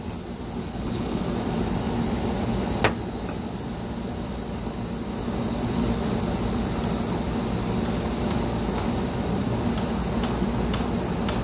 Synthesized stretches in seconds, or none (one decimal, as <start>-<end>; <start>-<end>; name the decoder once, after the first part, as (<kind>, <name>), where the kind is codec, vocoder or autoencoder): 0.6-1.2 (codec, HILCodec)